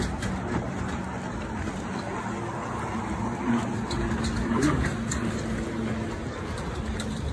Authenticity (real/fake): real